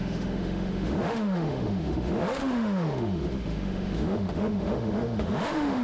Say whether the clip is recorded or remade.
remade